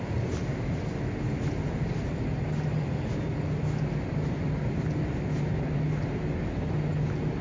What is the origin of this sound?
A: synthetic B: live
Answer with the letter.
B